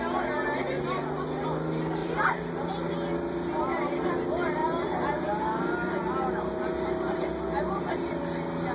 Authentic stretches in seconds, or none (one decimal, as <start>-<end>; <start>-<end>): 0.0-2.0; 2.9-8.7